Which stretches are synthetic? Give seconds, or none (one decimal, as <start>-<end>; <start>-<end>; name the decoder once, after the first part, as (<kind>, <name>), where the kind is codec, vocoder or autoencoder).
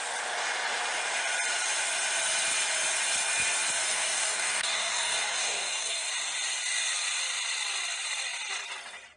3.9-6.1 (codec, DAC)